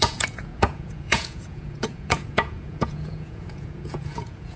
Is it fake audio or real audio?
fake